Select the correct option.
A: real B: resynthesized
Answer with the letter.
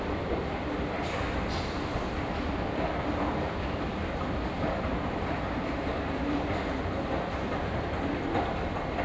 A